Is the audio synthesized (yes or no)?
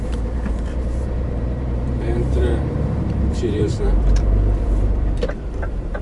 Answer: yes